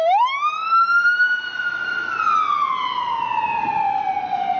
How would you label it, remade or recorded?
recorded